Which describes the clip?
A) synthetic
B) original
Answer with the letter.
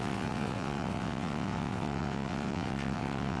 A